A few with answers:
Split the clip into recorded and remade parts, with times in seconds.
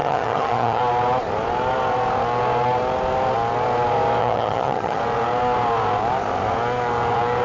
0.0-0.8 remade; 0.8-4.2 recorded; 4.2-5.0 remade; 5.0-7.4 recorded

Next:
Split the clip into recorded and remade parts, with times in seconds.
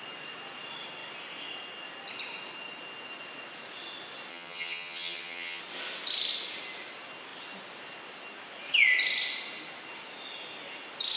0.0-4.3 recorded; 4.3-5.6 remade; 5.6-11.2 recorded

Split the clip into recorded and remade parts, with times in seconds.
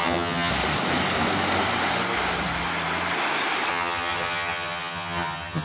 0.0-0.5 remade; 0.5-3.7 recorded; 3.7-5.6 remade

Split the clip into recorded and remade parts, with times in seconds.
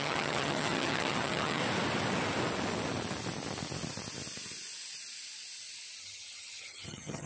0.0-1.6 remade; 1.6-6.0 recorded; 6.0-7.3 remade